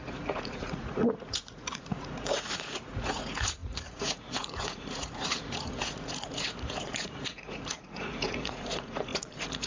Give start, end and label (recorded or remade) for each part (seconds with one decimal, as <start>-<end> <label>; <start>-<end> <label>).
0.0-9.7 remade